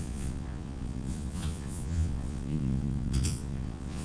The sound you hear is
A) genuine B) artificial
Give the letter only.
B